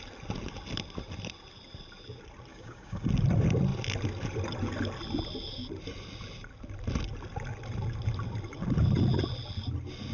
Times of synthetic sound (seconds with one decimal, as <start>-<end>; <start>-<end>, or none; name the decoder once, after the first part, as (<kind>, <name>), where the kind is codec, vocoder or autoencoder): 2.5-3.1 (codec, DAC)

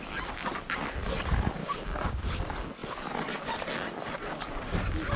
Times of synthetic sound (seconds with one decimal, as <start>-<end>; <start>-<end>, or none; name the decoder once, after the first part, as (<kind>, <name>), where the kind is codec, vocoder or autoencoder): 1.6-2.4 (codec, DAC)

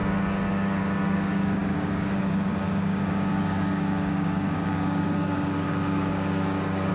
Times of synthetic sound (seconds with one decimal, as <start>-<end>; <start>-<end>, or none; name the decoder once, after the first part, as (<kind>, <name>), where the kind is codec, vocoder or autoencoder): 0.0-6.9 (codec, DAC)

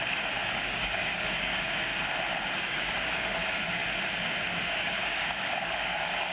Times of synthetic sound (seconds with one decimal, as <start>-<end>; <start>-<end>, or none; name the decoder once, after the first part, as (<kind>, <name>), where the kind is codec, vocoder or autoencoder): 0.0-1.9 (codec, DAC); 2.5-3.8; 4.5-6.3

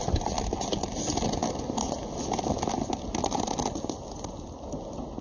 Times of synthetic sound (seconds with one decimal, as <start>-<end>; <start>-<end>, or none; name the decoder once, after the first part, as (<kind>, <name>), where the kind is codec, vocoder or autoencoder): none

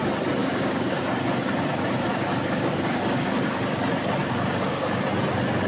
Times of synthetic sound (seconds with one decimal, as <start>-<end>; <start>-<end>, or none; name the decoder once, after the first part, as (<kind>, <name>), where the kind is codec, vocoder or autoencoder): 0.4-1.0 (codec, DAC); 2.1-3.5; 4.2-5.0

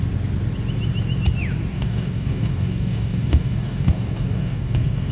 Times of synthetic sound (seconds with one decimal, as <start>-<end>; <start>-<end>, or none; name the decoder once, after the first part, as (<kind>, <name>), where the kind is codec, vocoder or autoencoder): 1.7-5.1 (codec, DAC)

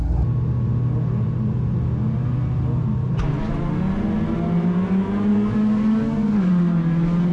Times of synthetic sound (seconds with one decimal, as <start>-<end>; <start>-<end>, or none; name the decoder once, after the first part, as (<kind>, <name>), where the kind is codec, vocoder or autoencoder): 5.3-6.5 (codec, DAC)